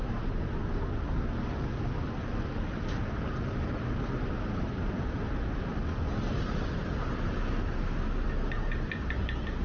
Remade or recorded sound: recorded